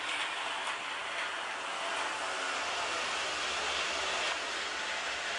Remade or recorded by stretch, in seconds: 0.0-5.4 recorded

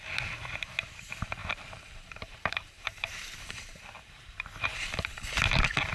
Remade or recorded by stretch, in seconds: 0.0-1.4 recorded; 1.4-4.9 remade; 4.9-5.9 recorded

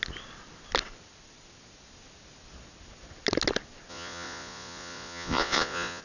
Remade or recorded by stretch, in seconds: 0.0-3.9 recorded; 3.9-6.0 remade

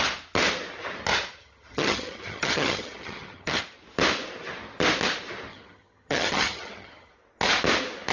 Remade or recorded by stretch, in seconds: 0.0-1.4 recorded; 1.4-3.6 remade; 3.6-5.5 recorded; 5.5-7.1 remade; 7.1-8.1 recorded

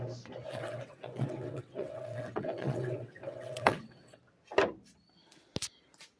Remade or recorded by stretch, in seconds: 0.0-0.5 recorded; 0.5-4.2 remade; 4.2-6.2 recorded

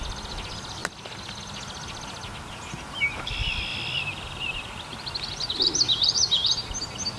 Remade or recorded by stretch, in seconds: 0.0-7.2 recorded